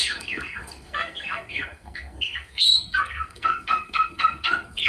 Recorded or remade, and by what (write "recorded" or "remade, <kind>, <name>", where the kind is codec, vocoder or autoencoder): remade, codec, SNAC